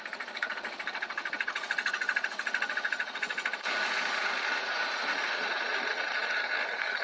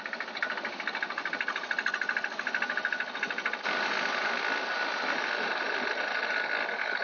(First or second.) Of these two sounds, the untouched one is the second